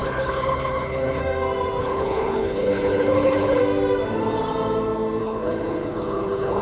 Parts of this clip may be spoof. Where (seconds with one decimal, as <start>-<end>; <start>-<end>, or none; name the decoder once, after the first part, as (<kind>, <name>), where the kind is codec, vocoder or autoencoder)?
0.0-1.2 (codec, HILCodec); 1.8-3.6; 5.2-6.6